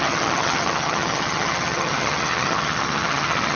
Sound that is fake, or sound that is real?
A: fake